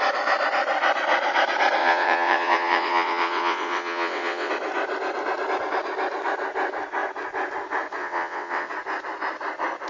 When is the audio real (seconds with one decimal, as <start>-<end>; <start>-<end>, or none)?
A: 0.0-1.8; 4.5-8.0; 8.7-9.9